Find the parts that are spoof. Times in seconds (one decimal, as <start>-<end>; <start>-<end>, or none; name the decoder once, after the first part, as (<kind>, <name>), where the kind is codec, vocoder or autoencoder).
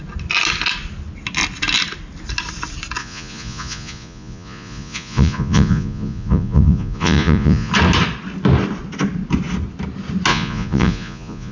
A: 3.0-7.7 (vocoder, Vocos); 10.3-11.5